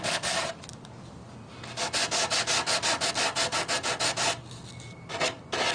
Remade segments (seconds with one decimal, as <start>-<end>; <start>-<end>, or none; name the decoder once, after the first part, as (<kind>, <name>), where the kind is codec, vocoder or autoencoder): none